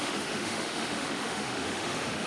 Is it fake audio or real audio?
fake